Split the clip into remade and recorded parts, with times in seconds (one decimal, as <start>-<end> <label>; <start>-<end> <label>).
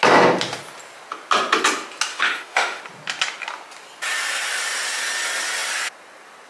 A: 0.0-2.1 recorded; 2.1-2.8 remade; 2.8-6.5 recorded